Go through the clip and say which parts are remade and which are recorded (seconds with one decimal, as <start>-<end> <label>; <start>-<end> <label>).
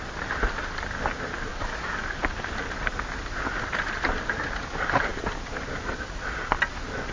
0.0-1.5 recorded; 1.5-2.2 remade; 2.2-7.1 recorded